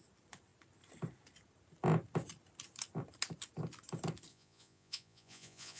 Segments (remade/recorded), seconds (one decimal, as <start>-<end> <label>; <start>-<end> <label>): 0.0-4.3 recorded; 4.3-5.8 remade